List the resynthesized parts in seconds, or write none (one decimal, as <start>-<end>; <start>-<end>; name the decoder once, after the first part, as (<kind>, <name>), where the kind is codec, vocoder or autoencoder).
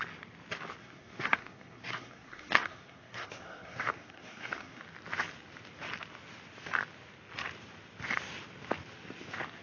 0.8-4.8 (codec, SNAC)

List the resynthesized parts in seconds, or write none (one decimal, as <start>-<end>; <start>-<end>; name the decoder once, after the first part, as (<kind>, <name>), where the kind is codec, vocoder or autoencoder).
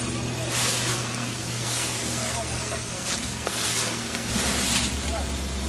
0.9-4.3 (codec, SNAC)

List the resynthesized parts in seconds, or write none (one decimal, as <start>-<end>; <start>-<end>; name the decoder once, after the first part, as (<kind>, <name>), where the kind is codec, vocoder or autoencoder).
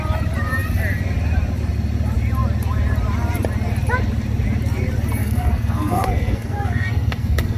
5.2-7.6 (codec, SNAC)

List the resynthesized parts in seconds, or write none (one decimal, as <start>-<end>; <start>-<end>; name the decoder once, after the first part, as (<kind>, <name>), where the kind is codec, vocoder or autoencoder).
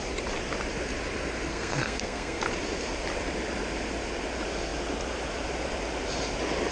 1.5-2.4 (codec, SNAC)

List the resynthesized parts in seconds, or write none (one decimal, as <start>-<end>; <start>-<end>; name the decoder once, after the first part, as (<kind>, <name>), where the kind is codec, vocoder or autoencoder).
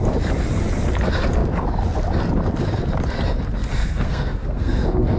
3.8-5.2 (codec, SNAC)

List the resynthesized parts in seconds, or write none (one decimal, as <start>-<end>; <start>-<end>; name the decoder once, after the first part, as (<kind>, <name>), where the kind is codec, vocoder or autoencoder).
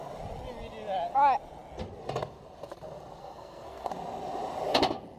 3.2-3.9 (codec, SNAC)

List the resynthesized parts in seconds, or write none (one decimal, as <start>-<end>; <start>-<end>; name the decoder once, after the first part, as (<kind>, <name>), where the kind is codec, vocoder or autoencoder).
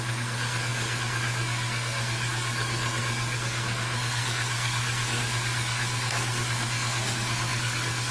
0.0-8.1 (codec, SNAC)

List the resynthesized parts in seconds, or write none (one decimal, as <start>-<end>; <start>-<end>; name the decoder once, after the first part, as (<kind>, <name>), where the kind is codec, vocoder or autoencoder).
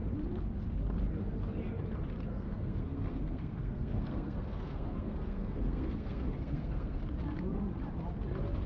2.3-7.0 (codec, SNAC)